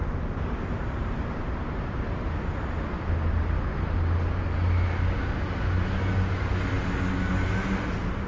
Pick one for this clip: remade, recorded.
recorded